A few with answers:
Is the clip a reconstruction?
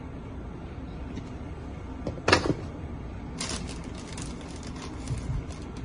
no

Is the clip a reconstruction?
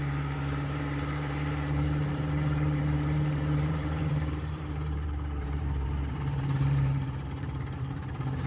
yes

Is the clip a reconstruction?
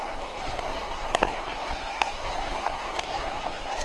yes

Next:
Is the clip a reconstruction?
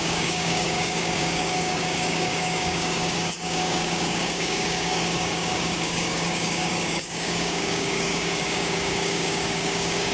yes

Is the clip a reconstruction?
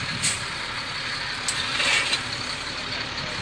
no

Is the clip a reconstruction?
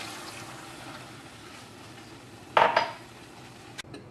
no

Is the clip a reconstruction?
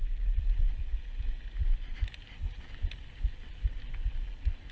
no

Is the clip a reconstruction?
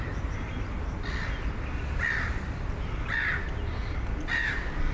no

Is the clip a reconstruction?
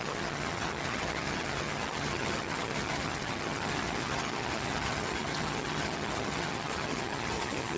yes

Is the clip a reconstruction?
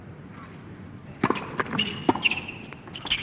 no